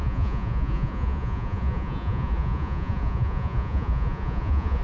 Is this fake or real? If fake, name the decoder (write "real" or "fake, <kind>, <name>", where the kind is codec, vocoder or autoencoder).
fake, vocoder, Vocos